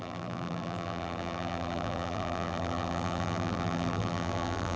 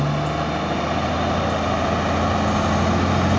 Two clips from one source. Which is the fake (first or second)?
first